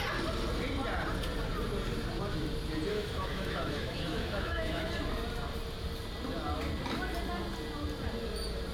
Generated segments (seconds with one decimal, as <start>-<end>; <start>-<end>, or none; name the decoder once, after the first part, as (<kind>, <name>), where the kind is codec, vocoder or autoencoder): 2.9-4.9 (autoencoder, DAC-VAE)